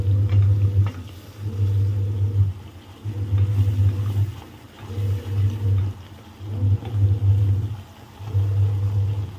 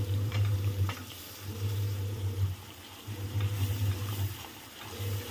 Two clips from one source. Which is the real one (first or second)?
first